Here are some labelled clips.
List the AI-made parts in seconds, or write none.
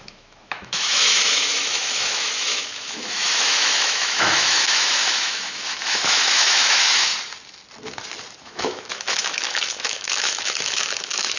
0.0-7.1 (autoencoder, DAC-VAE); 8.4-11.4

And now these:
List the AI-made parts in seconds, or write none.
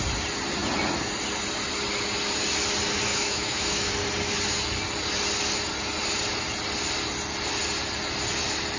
3.1-3.9 (autoencoder, DAC-VAE)